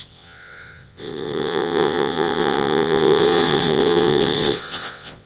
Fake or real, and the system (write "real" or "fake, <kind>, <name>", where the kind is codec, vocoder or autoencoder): fake, vocoder, WaveNeXt